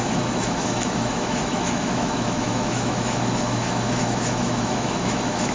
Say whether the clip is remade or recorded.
remade